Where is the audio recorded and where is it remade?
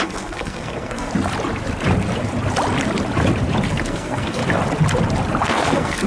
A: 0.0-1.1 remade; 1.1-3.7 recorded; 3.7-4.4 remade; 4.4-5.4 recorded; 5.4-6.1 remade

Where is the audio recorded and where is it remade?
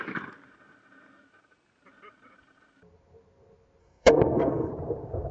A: 0.0-3.8 recorded; 3.8-4.7 remade; 4.7-5.3 recorded